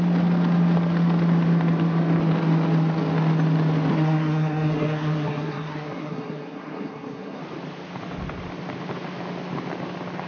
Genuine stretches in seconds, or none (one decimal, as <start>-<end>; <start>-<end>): 0.0-3.9; 7.4-10.3